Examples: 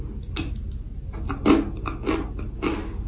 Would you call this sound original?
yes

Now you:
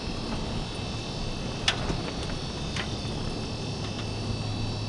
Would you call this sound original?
yes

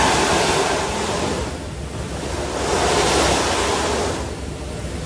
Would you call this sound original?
yes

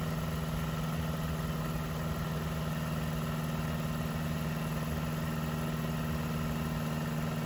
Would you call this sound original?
yes